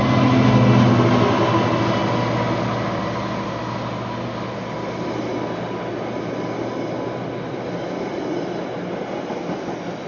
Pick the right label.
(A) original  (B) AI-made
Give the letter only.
A